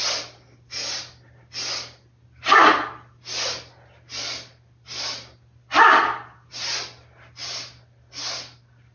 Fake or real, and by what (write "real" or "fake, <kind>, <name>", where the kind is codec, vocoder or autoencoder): real